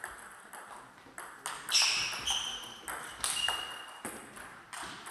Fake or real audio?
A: real